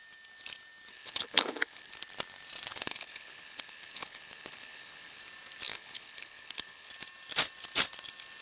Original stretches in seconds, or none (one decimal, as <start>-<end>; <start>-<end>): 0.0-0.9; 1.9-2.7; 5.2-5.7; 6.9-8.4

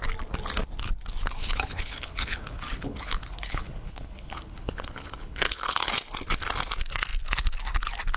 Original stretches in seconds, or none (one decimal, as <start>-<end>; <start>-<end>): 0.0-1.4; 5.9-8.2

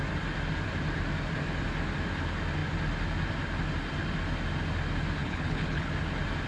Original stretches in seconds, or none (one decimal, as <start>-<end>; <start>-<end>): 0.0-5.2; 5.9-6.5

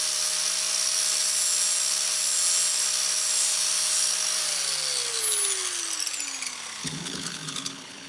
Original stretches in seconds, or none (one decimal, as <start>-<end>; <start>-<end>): 0.0-6.8

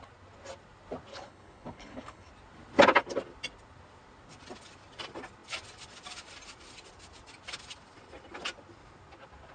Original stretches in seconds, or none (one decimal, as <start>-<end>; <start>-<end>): 0.0-1.1; 2.3-9.5

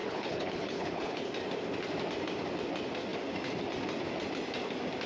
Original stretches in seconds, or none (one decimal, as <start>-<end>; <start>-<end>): 1.3-5.1